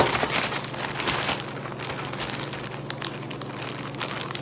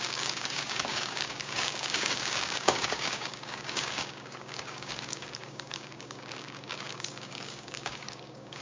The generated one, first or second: second